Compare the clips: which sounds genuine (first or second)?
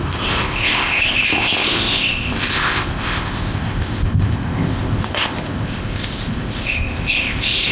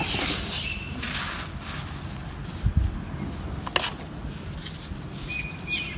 second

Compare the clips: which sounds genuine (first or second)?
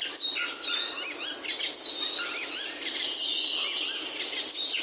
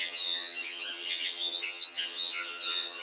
first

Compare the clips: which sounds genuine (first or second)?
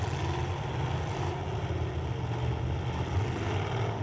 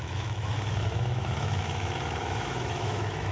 first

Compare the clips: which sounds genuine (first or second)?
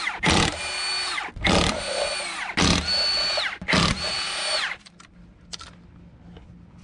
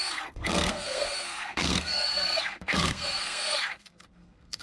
first